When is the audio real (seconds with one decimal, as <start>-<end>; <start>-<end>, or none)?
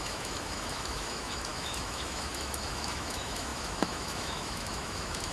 none